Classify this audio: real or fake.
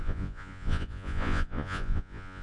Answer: fake